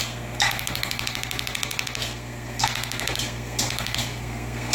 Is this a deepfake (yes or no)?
yes